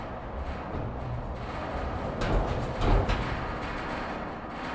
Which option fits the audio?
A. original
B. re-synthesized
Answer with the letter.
A